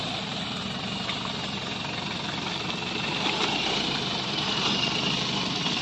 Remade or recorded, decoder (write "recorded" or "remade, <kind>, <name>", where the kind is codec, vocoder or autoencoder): recorded